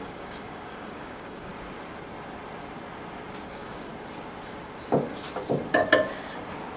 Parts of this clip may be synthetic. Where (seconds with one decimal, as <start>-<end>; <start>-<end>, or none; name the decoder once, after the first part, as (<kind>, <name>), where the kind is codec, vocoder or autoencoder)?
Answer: 0.0-1.5 (codec, DAC); 3.5-3.9